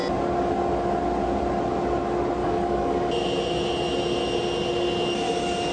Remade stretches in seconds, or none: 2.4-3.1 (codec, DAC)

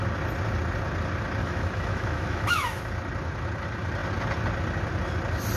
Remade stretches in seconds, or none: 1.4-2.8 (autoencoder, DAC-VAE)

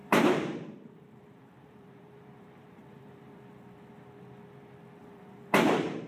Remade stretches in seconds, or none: 0.0-3.4 (vocoder, BigVGAN v2); 5.0-6.1